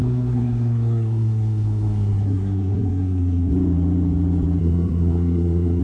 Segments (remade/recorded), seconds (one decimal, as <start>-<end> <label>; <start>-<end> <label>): 0.0-3.5 remade; 3.5-4.6 recorded; 4.6-5.8 remade